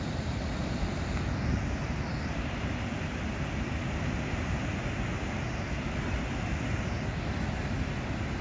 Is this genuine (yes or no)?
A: yes